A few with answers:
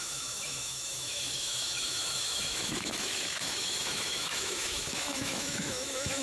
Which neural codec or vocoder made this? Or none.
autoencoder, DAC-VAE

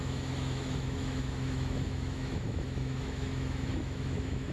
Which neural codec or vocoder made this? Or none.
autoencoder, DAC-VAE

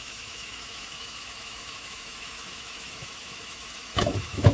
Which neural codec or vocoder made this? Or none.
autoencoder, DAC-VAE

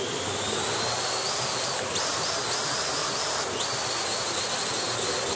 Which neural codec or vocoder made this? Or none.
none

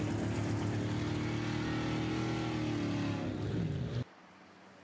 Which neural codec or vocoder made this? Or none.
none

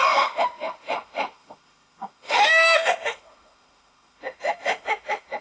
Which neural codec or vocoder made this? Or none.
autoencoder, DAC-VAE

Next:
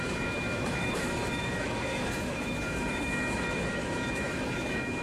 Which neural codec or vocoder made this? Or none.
autoencoder, DAC-VAE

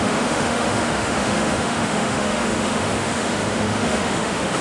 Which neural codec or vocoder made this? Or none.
autoencoder, DAC-VAE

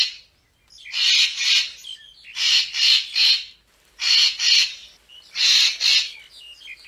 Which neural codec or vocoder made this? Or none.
none